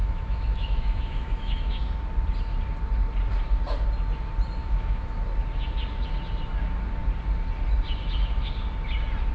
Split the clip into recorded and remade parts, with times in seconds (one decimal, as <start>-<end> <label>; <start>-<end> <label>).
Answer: 0.0-1.8 remade; 1.8-4.6 recorded; 4.6-5.2 remade; 5.2-9.3 recorded